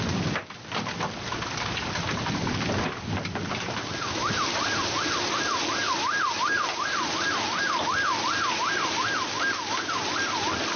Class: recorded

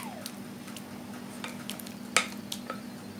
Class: recorded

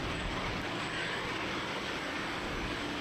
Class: remade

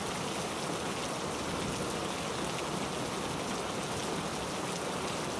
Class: recorded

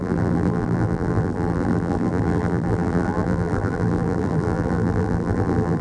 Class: remade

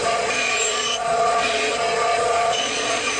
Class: remade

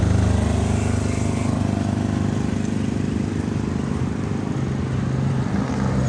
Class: recorded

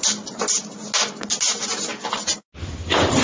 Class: recorded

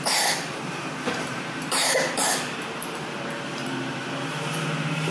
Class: remade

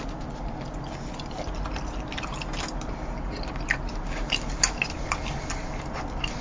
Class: recorded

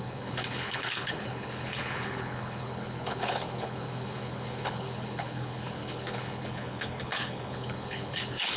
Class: remade